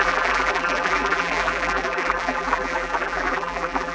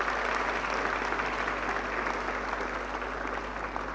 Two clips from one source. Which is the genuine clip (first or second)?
second